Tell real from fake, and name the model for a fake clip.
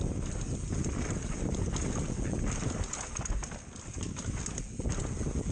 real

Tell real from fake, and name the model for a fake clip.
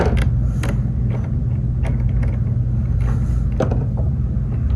real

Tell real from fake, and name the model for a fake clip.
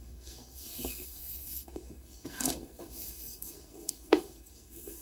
fake, codec, SNAC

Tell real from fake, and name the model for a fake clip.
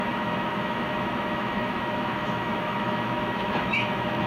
fake, autoencoder, DAC-VAE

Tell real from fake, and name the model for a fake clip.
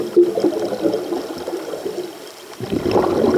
real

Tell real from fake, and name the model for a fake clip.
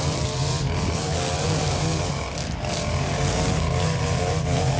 real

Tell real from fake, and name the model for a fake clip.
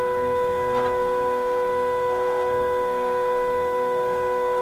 fake, codec, SNAC